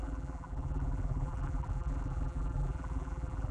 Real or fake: fake